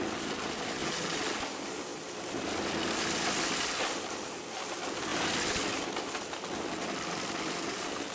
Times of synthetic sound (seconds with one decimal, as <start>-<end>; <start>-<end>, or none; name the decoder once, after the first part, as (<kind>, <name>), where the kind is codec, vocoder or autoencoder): 0.0-0.8 (vocoder, BigVGAN v2); 1.4-1.9; 4.0-5.1; 6.4-8.1